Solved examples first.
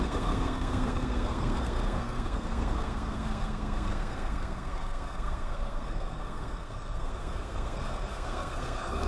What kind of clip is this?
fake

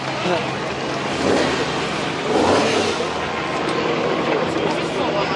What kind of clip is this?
real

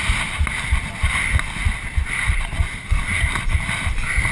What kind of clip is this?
real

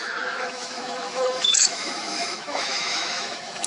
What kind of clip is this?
fake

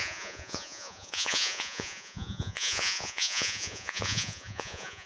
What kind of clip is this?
fake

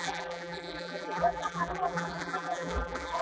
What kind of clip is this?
fake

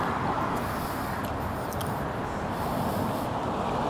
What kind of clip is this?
real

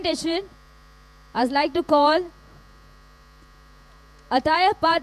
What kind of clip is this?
fake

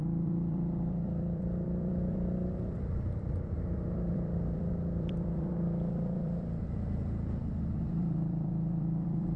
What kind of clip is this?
fake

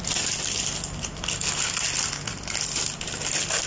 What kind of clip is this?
real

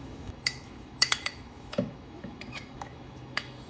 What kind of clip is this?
fake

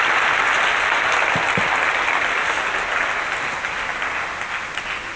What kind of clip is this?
real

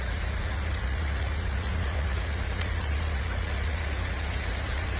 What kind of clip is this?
fake